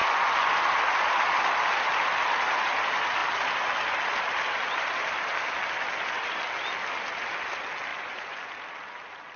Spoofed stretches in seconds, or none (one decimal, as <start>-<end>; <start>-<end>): 0.0-0.6; 7.9-8.5